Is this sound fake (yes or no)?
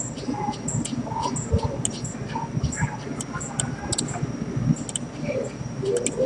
no